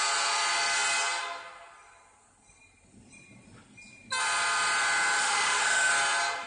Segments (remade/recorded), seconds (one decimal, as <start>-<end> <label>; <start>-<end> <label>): 0.0-5.2 recorded; 5.2-5.9 remade; 5.9-6.5 recorded